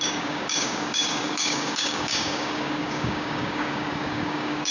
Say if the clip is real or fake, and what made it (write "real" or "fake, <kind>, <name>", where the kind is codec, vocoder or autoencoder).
fake, codec, DAC